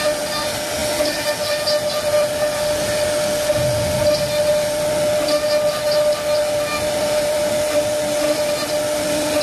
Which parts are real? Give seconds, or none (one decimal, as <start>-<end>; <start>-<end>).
0.0-7.0; 7.5-9.4